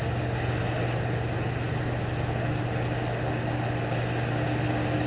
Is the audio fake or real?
real